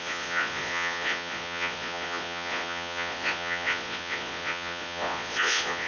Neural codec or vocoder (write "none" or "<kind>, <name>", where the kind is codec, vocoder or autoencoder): vocoder, Vocos